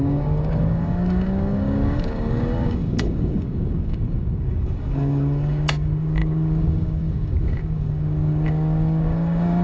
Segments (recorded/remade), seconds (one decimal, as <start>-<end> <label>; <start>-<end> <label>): 0.0-9.6 remade